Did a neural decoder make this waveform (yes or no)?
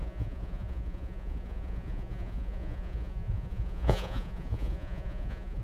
yes